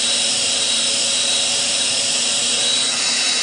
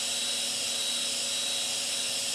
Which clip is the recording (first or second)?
second